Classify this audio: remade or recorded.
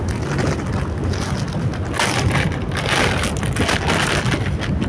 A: recorded